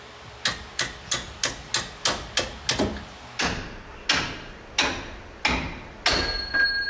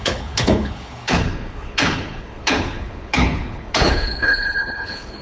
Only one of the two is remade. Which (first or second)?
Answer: second